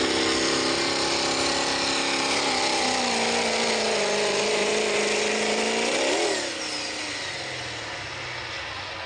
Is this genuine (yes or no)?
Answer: yes